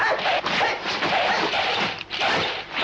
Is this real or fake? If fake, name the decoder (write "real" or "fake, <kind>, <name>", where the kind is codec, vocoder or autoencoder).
fake, vocoder, BigVGAN v2